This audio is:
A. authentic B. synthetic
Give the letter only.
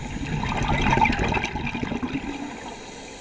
A